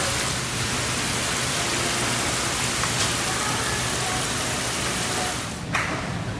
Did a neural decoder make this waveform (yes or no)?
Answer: no